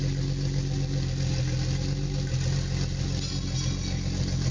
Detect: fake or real real